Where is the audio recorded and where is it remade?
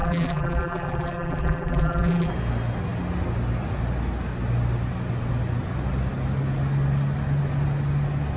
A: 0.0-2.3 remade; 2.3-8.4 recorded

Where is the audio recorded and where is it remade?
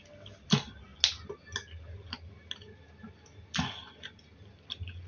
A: 0.0-5.1 recorded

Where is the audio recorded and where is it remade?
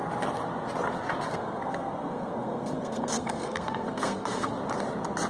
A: 0.0-1.3 recorded; 1.3-4.5 remade; 4.5-5.3 recorded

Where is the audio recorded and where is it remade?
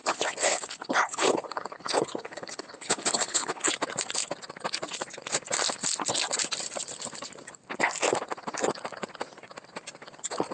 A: 0.0-3.7 remade; 3.7-10.5 recorded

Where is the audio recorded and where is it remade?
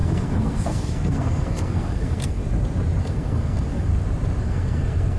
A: 0.0-2.4 remade; 2.4-3.0 recorded; 3.0-3.9 remade; 3.9-4.4 recorded; 4.4-5.2 remade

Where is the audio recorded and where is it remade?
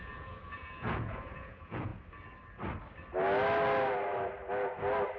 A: 0.0-1.9 remade; 1.9-5.2 recorded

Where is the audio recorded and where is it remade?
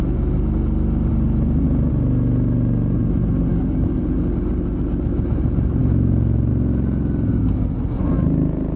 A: 0.0-3.5 recorded; 3.5-4.0 remade; 4.0-8.8 recorded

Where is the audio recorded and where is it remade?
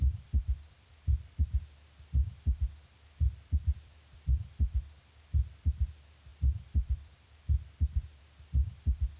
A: 0.0-1.3 remade; 1.3-3.7 recorded; 3.7-4.3 remade; 4.3-6.3 recorded; 6.3-8.2 remade; 8.2-9.2 recorded